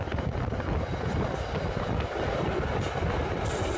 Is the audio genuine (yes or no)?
yes